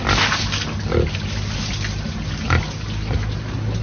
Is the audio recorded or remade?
recorded